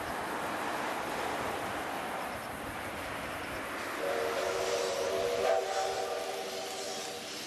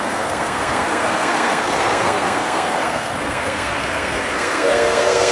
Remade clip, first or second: second